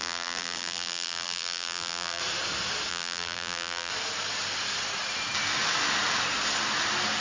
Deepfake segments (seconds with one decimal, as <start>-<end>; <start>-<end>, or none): 0.0-2.2; 2.9-3.9

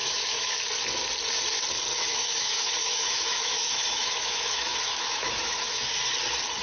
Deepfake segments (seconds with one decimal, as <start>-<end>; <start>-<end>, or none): 0.0-0.6; 1.9-5.9

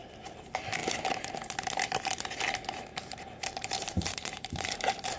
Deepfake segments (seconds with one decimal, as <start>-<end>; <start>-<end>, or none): 0.8-1.4; 2.9-5.2

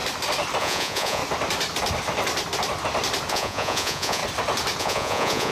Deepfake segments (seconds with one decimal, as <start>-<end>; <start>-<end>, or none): 0.6-1.2; 3.3-4.2; 4.8-5.5

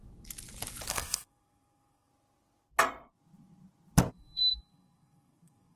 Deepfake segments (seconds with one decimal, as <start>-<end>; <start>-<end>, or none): 0.9-2.1; 4.1-5.8

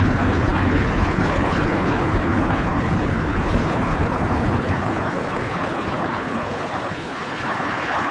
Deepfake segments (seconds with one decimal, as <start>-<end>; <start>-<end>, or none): 0.0-8.1

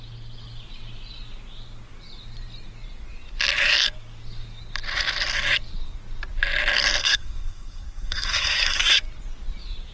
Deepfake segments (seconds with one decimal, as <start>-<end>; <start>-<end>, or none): 7.0-9.0